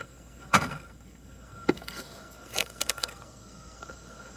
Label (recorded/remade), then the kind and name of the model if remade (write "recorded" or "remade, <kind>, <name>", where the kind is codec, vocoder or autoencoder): remade, codec, SNAC